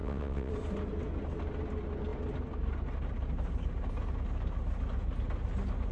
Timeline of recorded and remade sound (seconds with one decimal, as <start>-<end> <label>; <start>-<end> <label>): 0.0-0.5 remade; 0.5-5.9 recorded